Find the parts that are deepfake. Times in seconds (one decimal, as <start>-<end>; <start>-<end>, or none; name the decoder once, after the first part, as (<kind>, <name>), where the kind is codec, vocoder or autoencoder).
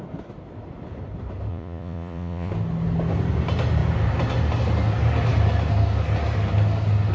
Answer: 1.5-2.5 (vocoder, Vocos)